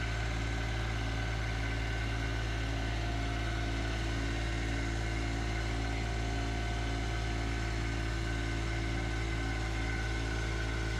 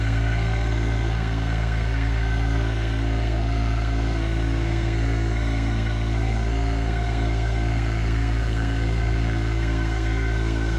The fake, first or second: second